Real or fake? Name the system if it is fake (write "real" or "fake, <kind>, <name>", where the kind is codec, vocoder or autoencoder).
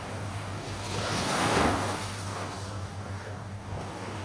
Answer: fake, codec, DAC